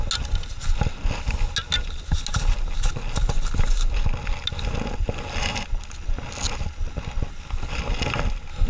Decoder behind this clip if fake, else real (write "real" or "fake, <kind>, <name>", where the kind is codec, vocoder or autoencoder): real